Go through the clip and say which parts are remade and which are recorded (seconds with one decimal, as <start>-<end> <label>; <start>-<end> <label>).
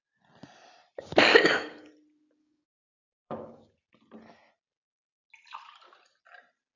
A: 0.0-1.3 recorded; 1.3-1.9 remade; 1.9-2.4 recorded; 2.4-3.7 remade; 3.7-6.8 recorded